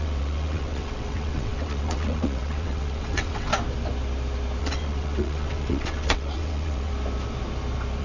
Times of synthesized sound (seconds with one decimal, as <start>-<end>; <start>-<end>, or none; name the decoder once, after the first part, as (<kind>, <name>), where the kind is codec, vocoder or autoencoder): 0.0-3.5 (vocoder, WaveNeXt); 4.6-6.9